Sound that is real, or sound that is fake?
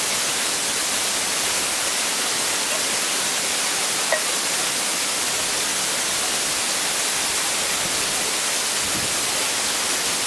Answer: real